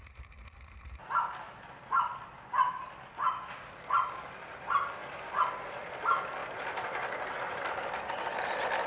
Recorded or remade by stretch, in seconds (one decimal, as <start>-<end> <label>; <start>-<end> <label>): 0.0-8.9 recorded